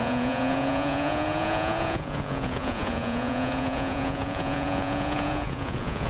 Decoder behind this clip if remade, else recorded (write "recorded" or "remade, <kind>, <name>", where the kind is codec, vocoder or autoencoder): remade, vocoder, Vocos